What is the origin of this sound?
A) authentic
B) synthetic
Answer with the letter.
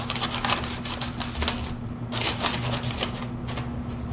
A